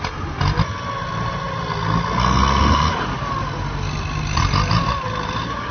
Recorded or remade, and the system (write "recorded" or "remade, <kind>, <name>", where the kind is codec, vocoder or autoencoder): recorded